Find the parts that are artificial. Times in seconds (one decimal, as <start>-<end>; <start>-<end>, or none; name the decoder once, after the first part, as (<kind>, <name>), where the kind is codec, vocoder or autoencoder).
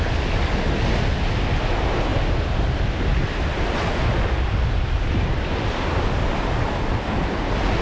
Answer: none